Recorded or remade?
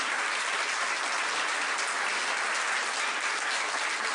recorded